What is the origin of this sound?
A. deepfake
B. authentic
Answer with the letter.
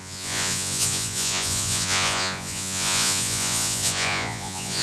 A